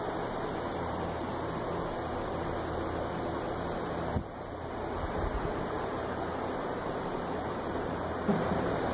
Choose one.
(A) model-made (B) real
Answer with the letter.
A